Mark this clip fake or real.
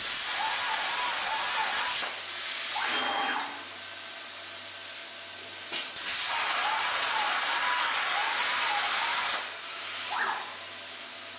real